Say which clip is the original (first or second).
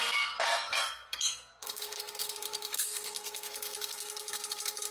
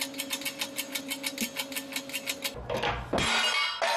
second